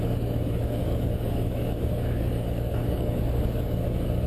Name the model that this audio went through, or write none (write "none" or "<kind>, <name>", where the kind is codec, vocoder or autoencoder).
codec, DAC